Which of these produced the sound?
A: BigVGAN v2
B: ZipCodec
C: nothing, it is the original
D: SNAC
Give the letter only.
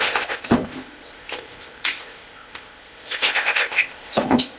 B